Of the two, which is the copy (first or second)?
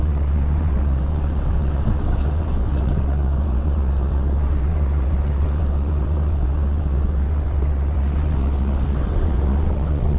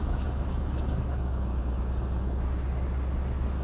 first